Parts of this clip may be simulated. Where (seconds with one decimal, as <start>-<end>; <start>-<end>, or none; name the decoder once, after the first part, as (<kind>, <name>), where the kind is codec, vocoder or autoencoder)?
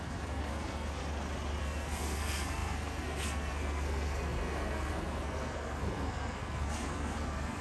0.0-1.0 (codec, SNAC); 1.6-7.6